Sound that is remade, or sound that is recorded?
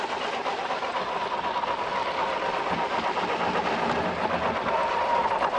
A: recorded